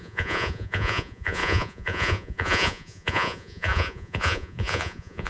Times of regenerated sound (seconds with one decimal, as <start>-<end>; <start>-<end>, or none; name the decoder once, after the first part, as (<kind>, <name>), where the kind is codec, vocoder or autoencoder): 0.0-5.3 (vocoder, Vocos)